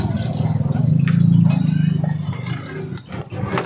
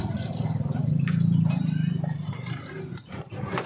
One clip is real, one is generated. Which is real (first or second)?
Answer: first